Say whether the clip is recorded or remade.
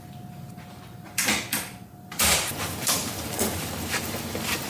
remade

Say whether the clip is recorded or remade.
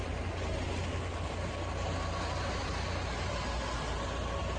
recorded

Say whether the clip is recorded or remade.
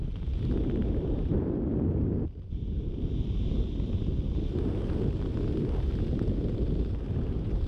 recorded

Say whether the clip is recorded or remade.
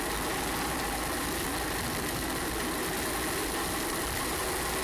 recorded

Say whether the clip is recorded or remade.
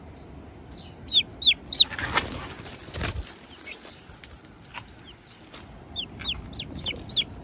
recorded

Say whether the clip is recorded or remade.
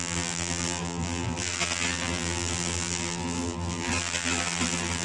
remade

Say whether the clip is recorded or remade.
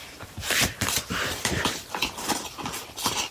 remade